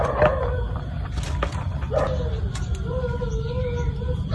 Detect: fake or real real